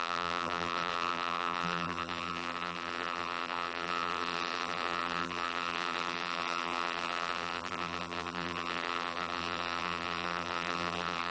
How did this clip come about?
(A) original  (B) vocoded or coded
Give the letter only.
B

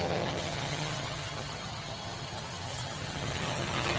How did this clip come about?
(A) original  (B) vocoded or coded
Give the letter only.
B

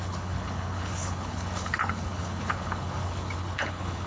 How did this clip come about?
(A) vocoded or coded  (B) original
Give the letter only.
A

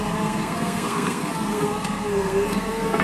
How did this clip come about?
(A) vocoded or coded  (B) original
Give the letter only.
A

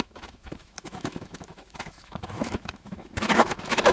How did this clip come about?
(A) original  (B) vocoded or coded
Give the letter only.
B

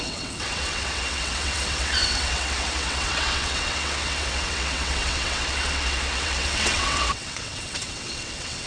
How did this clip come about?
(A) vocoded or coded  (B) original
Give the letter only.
A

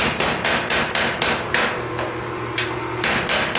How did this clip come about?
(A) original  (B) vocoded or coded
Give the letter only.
A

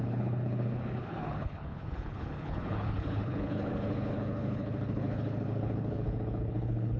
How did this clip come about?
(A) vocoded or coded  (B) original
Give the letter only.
A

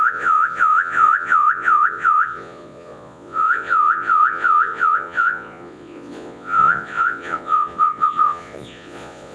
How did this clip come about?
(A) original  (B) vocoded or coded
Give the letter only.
B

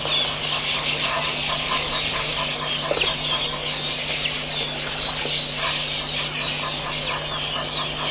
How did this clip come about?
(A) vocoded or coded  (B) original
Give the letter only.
B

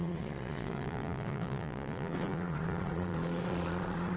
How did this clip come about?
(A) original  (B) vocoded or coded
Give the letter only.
B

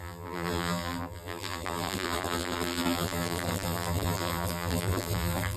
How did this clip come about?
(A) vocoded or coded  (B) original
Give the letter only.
A